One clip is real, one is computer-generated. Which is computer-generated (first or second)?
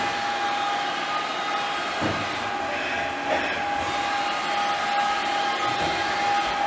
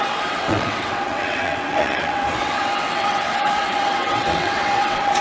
second